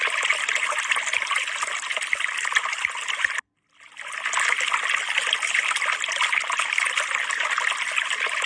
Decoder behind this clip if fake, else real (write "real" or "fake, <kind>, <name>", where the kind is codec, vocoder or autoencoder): real